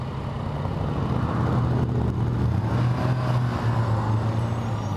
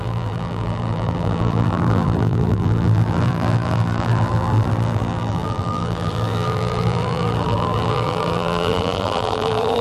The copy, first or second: second